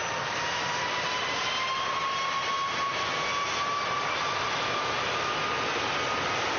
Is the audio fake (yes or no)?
no